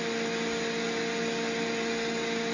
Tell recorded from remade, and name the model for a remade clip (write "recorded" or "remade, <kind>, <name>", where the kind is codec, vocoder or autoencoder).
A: recorded